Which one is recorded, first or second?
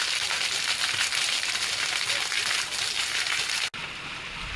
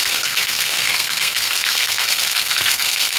first